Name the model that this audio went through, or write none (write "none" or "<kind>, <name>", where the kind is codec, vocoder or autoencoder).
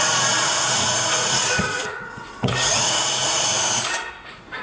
vocoder, Vocos